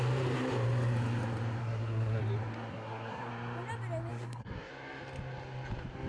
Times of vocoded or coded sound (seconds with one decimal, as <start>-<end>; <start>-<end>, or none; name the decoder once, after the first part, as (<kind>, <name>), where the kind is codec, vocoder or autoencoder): 1.6-2.2 (codec, SNAC); 2.7-3.3; 4.1-4.7